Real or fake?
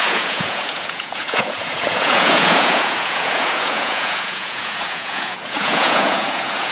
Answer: fake